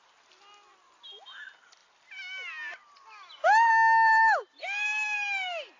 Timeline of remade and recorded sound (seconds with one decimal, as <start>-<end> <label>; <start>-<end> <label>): 0.0-5.8 recorded